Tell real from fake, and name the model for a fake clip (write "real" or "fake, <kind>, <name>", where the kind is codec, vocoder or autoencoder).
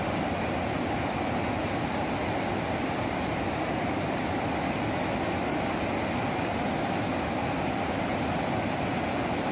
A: real